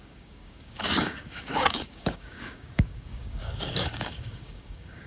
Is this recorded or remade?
remade